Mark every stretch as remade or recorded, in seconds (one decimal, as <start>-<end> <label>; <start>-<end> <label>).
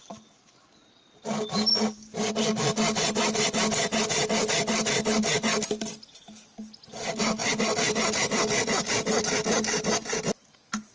0.0-10.9 recorded